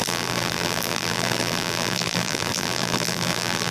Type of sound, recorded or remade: remade